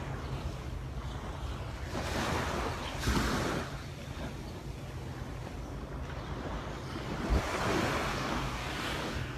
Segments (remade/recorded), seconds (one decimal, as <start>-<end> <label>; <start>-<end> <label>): 0.0-8.1 recorded; 8.1-9.4 remade